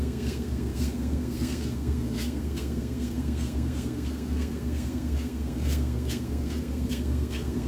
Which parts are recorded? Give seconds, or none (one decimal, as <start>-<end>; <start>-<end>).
none